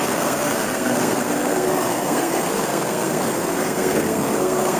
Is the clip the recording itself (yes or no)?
no